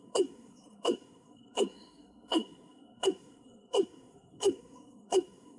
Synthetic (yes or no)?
yes